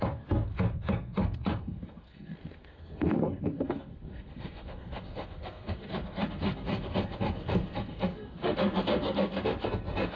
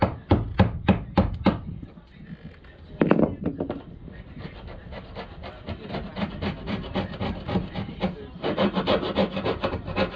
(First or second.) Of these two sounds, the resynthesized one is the first